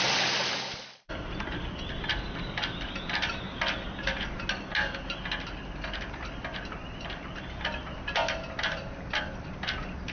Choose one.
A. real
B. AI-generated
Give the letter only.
A